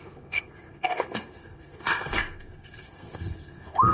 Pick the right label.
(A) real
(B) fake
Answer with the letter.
B